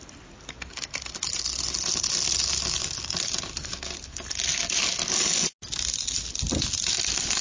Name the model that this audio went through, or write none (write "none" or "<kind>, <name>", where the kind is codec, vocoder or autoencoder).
none